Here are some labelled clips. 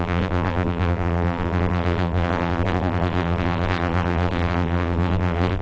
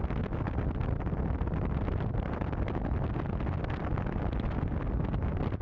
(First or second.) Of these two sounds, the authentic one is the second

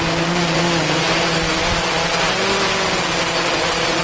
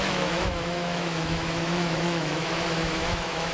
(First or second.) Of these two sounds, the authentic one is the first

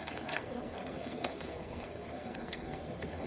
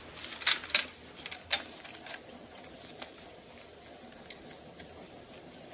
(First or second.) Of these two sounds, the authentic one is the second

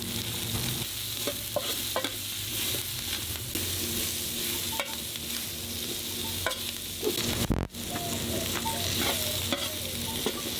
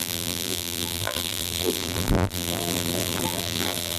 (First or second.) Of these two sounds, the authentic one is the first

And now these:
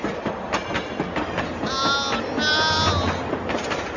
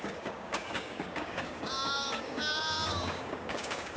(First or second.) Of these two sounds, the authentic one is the first